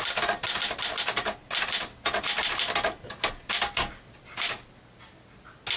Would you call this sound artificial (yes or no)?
no